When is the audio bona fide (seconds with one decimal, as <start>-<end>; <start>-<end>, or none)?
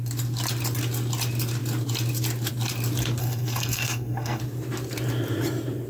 0.0-3.2; 4.4-5.9